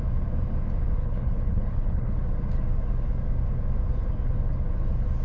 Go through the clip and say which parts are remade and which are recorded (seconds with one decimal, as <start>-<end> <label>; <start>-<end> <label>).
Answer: 0.0-1.0 recorded; 1.0-2.2 remade; 2.2-5.2 recorded